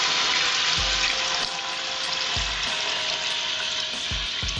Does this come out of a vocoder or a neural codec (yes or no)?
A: no